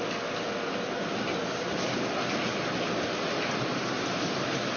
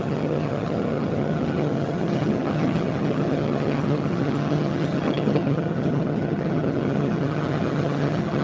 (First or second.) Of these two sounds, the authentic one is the first